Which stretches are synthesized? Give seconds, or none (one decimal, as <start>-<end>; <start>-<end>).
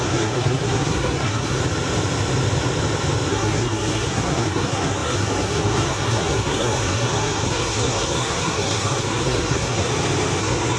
0.0-1.6; 3.3-9.9; 10.4-10.8